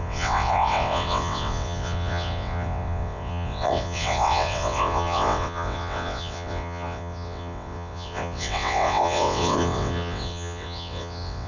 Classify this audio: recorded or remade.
remade